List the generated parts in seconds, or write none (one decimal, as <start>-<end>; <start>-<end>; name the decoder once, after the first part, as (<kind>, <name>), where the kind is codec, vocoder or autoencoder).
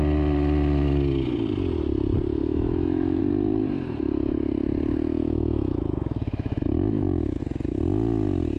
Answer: 2.4-3.2 (autoencoder, DAC-VAE); 5.2-7.4